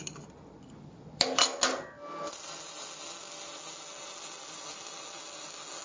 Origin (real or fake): real